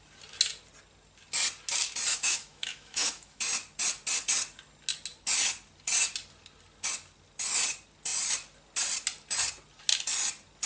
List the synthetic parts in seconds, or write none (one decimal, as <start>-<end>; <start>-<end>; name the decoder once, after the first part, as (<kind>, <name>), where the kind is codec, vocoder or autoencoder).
2.1-3.4 (autoencoder, DAC-VAE)